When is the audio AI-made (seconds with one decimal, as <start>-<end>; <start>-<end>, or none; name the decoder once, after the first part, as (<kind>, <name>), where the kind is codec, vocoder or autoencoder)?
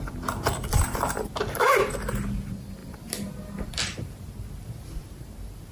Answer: none